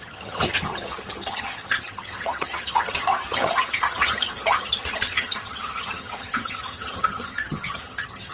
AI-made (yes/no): yes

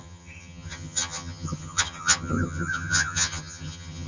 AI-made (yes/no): yes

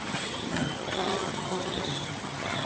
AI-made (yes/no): yes